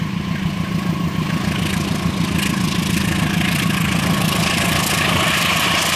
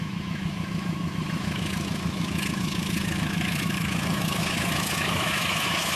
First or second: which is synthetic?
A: second